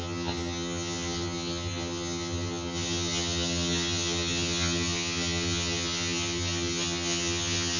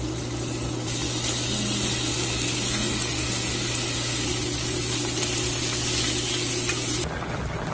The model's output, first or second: first